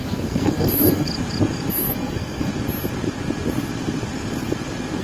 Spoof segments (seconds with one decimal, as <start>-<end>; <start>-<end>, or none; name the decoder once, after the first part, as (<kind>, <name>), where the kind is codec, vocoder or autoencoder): 0.0-1.1 (codec, SNAC); 1.7-2.5